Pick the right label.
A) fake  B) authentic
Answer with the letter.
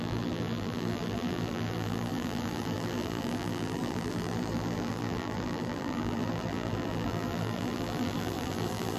A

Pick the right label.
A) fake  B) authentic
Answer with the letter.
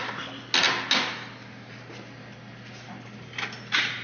B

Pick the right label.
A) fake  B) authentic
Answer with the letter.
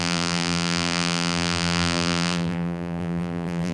A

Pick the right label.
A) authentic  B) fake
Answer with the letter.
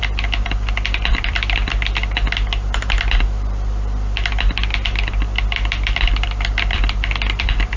B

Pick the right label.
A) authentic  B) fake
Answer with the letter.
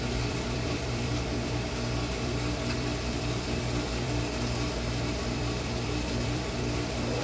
B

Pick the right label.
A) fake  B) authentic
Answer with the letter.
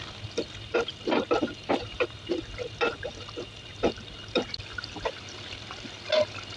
B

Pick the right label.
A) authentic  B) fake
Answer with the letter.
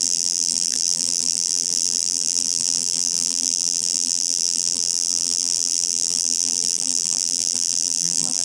B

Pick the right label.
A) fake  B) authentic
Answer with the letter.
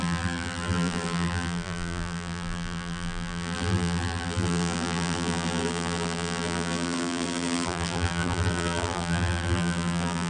A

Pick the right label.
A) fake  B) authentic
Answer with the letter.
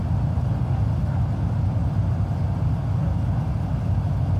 B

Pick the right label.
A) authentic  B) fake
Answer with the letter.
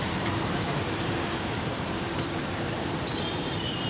B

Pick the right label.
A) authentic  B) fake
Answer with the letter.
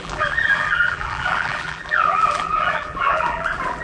B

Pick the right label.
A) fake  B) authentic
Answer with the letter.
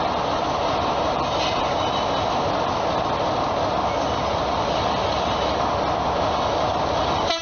B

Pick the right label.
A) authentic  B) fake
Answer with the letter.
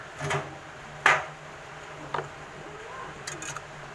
A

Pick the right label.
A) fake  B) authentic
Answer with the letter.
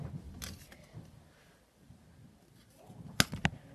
B